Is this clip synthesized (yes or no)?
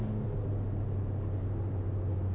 no